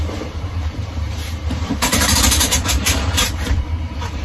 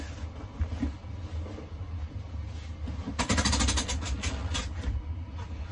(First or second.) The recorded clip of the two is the second